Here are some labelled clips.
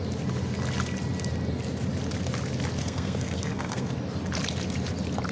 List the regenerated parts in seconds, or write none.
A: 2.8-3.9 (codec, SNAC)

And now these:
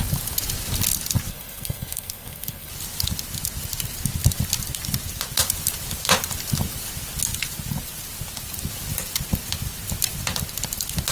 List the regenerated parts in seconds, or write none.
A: 1.3-2.7 (codec, SNAC)

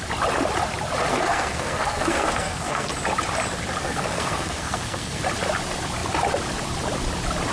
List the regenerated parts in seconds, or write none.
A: 1.1-2.9 (codec, SNAC); 3.8-5.2

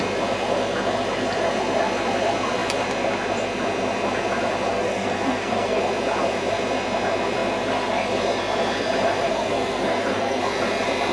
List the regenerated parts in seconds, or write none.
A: 4.7-5.8 (codec, SNAC); 9.3-10.4